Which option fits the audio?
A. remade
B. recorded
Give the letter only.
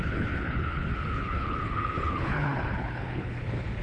A